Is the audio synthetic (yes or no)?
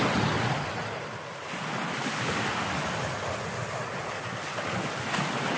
no